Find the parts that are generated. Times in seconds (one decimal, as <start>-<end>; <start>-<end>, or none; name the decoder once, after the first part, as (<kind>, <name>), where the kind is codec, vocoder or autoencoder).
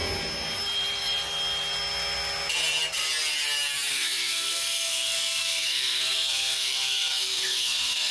3.9-8.1 (codec, SNAC)